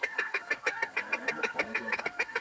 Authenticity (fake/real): fake